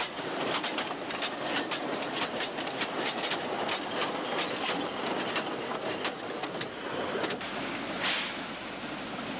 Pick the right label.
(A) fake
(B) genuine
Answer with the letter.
B